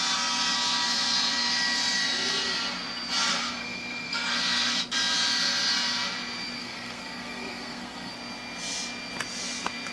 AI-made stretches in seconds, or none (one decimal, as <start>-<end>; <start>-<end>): 3.3-4.8; 6.6-8.1